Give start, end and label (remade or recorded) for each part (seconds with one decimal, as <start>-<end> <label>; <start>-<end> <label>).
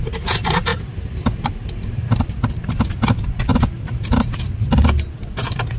0.0-0.7 recorded; 0.7-2.7 remade; 2.7-3.5 recorded; 3.5-4.7 remade; 4.7-5.8 recorded